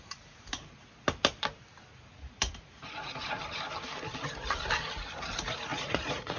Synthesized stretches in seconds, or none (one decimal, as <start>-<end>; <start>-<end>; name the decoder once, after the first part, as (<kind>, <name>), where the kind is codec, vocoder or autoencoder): 2.4-3.4 (vocoder, Vocos); 5.7-6.4

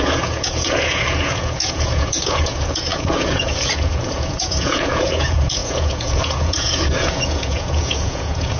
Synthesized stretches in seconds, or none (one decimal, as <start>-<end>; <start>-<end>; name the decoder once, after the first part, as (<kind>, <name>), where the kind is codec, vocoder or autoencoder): 0.0-8.6 (vocoder, Vocos)

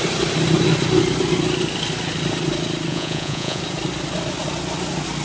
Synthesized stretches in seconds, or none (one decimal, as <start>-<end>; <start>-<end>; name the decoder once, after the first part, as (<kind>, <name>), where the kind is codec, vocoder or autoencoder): 2.9-3.6 (vocoder, Vocos)

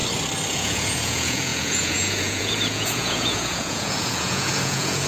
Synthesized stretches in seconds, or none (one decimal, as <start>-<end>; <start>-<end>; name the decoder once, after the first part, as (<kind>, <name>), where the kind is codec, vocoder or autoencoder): 0.5-5.1 (vocoder, Vocos)

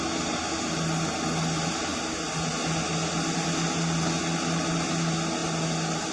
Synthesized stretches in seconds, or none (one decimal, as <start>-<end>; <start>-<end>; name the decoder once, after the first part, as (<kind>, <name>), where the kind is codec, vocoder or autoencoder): none